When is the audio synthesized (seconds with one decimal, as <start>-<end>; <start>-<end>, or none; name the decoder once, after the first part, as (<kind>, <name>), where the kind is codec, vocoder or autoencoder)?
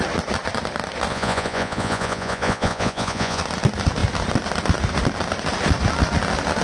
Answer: 1.1-3.4 (vocoder, Vocos)